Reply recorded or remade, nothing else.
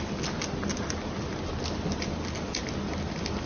recorded